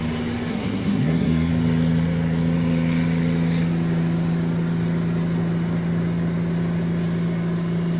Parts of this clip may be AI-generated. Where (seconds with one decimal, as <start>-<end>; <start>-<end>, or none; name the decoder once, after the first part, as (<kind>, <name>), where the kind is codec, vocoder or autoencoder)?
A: 0.5-1.5 (codec, SNAC)